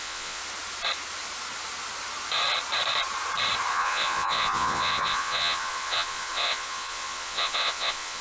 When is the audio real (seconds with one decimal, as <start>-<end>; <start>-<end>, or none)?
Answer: 0.4-3.7